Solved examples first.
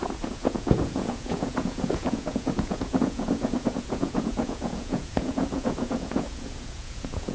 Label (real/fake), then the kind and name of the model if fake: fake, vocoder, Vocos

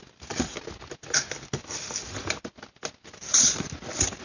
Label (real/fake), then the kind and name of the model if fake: real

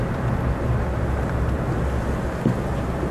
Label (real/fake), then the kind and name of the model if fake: real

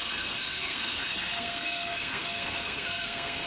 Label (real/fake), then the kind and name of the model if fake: fake, codec, SNAC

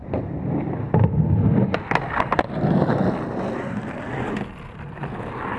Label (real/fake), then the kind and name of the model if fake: real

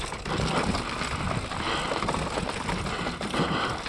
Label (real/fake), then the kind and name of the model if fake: real